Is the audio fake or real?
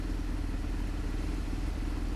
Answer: real